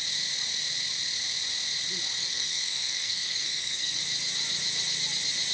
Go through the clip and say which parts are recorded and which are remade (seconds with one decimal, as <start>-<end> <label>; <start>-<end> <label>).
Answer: 0.0-2.2 recorded; 2.2-4.0 remade; 4.0-5.5 recorded